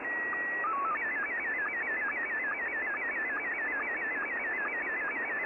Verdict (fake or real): real